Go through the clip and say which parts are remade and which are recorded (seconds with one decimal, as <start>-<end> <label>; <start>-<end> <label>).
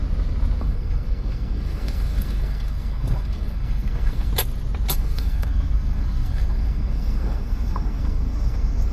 0.0-0.6 recorded; 0.6-4.3 remade; 4.3-4.9 recorded; 4.9-8.9 remade